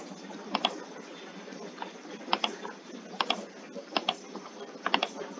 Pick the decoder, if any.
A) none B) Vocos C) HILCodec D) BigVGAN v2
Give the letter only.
A